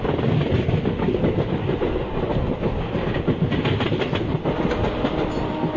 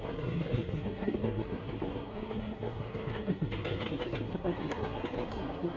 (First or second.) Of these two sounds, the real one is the first